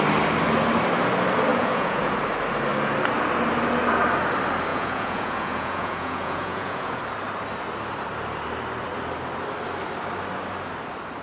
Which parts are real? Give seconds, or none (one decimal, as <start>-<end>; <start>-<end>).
0.0-1.5; 2.2-4.7; 7.0-11.2